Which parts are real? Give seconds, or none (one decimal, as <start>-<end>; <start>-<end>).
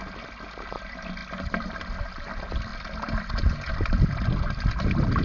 0.0-1.2; 2.1-2.7; 3.7-5.2